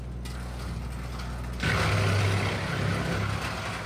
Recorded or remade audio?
recorded